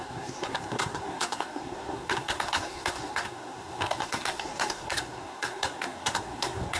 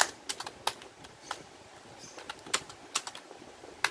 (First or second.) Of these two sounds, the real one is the second